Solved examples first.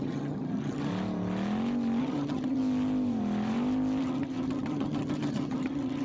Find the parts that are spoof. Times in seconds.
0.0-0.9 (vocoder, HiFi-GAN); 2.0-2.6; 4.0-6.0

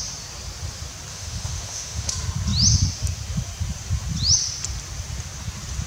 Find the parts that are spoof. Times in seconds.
1.1-2.1 (autoencoder, DAC-VAE)

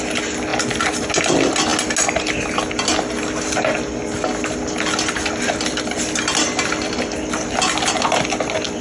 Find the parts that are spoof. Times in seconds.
none

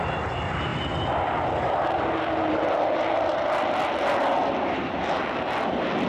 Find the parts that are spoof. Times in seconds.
none

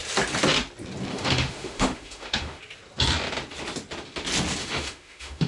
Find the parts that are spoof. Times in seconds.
1.1-2.6 (autoencoder, DAC-VAE); 4.6-5.5

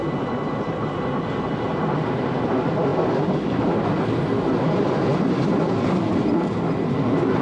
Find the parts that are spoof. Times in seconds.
none